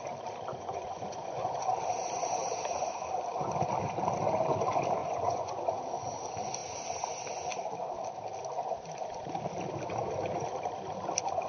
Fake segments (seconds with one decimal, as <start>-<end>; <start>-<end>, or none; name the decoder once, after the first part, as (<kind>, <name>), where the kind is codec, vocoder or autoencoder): 0.5-1.8 (vocoder, Vocos); 5.0-5.6